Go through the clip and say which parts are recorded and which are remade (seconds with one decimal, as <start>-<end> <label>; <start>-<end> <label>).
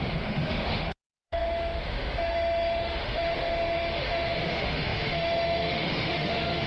0.0-6.7 remade